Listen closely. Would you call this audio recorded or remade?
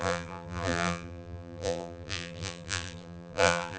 remade